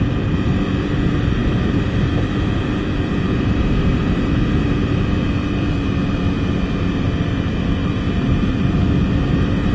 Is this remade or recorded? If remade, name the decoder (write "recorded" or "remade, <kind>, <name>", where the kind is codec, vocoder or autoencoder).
remade, vocoder, BigVGAN v2